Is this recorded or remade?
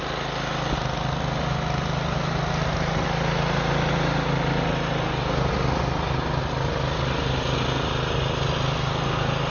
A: recorded